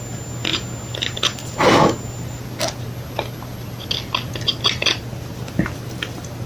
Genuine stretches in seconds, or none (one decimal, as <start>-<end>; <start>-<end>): 0.0-6.5